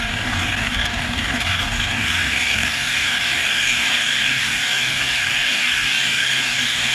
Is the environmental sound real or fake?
fake